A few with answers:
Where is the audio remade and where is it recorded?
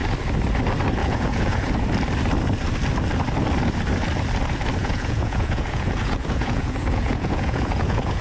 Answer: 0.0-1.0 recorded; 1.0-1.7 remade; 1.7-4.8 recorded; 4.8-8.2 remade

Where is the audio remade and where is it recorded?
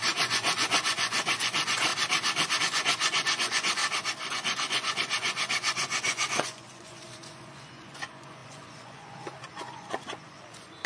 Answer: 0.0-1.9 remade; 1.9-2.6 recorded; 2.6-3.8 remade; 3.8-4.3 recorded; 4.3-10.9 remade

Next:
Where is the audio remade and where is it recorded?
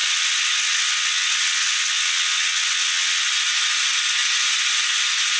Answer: 0.0-3.2 remade; 3.2-5.4 recorded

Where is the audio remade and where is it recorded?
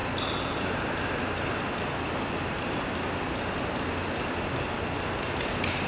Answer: 0.0-5.9 recorded